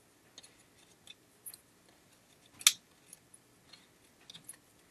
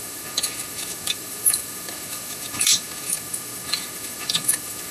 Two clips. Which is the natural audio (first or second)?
first